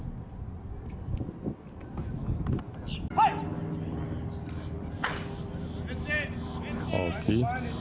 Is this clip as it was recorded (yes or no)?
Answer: yes